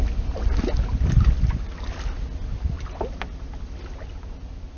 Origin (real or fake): real